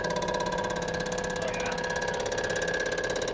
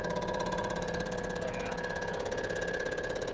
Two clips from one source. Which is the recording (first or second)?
first